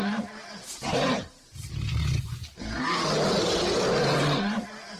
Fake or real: real